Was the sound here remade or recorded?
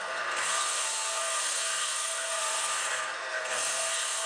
remade